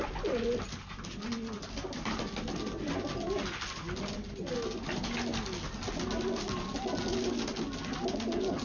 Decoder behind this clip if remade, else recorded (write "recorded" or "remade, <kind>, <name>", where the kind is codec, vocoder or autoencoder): recorded